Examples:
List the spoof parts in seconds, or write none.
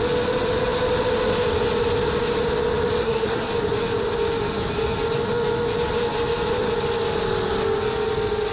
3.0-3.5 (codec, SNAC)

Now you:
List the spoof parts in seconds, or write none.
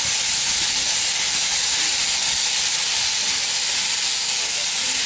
none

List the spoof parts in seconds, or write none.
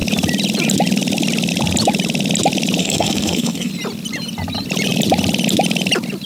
2.8-3.7 (codec, SNAC)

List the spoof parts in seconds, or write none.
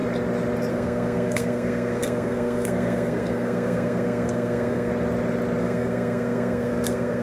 0.7-4.9 (codec, SNAC); 5.6-7.2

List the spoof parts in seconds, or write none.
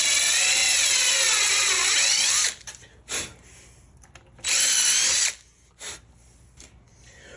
none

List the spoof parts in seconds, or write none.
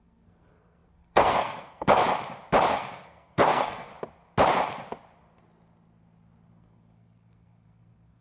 0.0-2.0 (codec, SNAC); 2.7-3.9; 6.5-8.2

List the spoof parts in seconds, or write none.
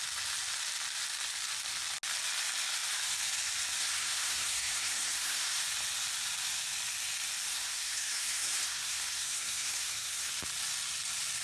3.8-5.6 (codec, SNAC); 7.5-10.3